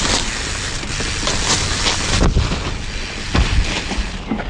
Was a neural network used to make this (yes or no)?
no